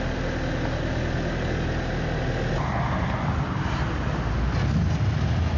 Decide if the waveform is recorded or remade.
recorded